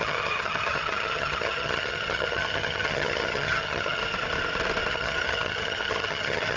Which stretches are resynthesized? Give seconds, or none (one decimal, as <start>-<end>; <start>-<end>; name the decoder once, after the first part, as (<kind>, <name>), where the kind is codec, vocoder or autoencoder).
0.0-4.0 (vocoder, HiFi-GAN); 4.9-6.6